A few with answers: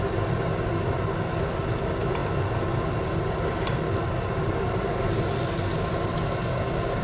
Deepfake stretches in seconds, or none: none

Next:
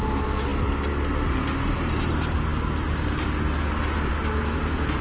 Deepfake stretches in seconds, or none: none